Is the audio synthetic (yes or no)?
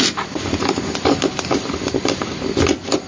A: no